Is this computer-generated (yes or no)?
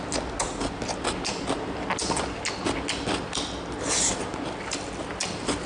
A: no